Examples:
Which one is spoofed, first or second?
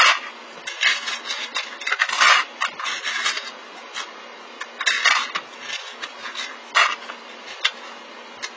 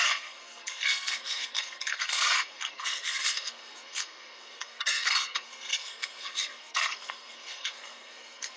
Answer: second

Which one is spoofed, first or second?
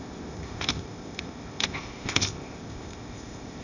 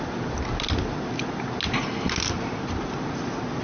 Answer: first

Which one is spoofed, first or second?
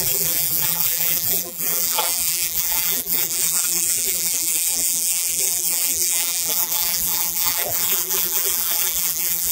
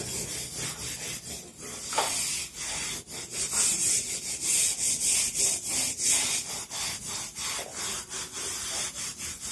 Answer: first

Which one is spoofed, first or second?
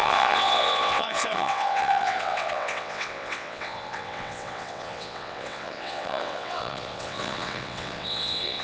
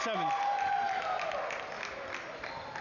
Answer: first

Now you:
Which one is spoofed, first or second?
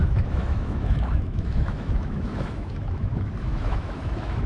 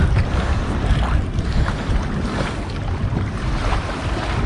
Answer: first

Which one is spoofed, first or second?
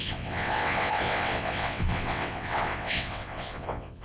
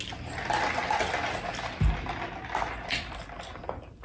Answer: first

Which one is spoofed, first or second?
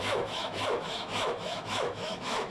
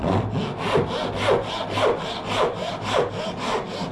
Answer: first